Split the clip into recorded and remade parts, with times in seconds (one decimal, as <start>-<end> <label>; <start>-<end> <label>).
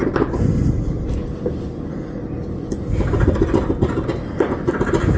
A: 0.0-5.2 recorded